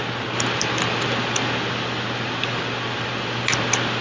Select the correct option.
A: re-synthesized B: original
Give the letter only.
B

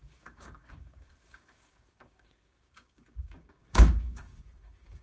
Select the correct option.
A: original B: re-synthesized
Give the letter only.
B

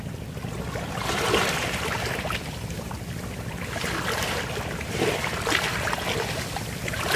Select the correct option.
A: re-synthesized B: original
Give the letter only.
B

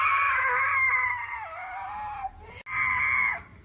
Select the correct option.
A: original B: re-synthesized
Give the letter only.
A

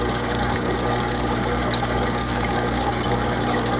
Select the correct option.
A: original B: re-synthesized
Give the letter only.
B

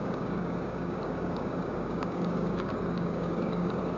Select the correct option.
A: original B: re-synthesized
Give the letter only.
B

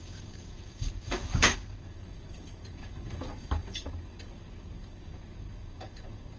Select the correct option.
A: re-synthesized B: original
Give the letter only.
A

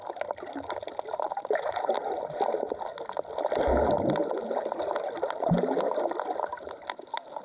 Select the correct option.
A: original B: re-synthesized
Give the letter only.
A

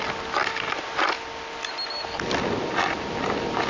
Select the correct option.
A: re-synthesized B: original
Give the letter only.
B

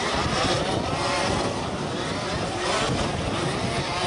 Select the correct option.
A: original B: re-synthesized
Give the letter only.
A